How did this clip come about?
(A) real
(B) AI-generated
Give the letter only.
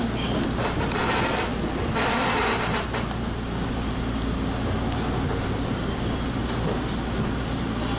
A